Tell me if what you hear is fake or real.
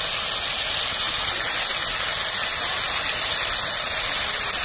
real